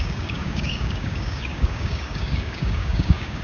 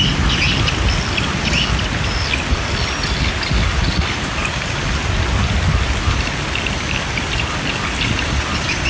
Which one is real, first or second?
second